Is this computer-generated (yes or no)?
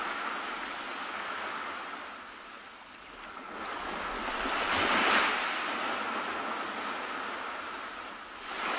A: no